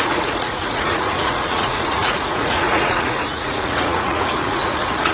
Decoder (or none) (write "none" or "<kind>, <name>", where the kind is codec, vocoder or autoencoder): vocoder, Vocos